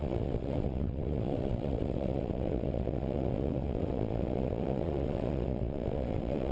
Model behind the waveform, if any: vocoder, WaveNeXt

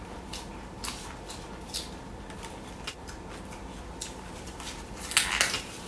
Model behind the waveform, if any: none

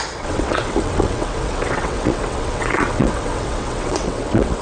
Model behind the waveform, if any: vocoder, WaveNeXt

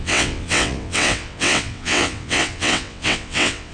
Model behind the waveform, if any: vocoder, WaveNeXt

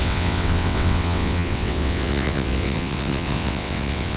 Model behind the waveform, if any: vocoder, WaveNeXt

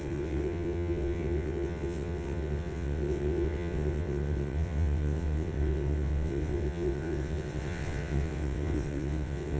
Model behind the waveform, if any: vocoder, WaveNeXt